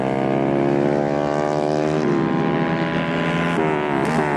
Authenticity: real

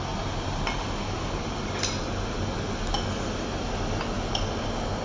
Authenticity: real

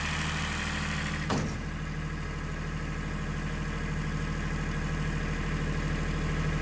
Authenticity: fake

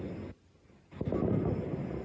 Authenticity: real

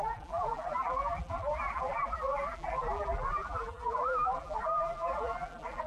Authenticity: fake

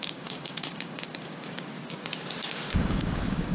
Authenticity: fake